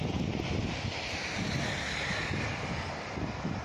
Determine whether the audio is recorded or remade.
recorded